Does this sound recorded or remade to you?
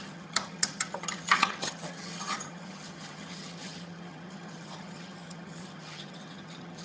remade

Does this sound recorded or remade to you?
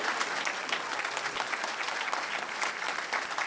recorded